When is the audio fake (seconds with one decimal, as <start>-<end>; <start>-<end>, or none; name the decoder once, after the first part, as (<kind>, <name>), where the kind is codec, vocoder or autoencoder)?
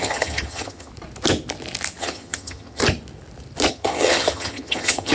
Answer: 0.0-0.9 (vocoder, HiFi-GAN); 2.0-2.8; 3.7-5.1